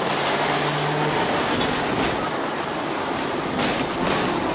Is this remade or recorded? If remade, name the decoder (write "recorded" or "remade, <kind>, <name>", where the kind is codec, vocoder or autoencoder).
recorded